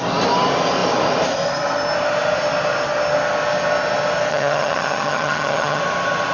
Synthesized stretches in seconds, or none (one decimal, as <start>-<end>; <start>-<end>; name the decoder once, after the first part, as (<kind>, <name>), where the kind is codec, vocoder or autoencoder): 4.3-5.8 (vocoder, HiFi-GAN)